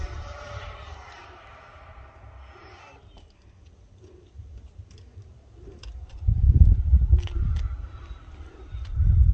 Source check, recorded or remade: remade